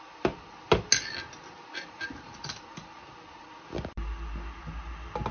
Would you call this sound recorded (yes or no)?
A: yes